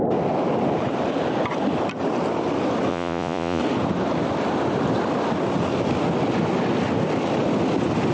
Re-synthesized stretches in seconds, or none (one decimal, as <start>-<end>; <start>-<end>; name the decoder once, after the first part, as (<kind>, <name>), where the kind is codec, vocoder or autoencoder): 2.9-3.6 (vocoder, Vocos)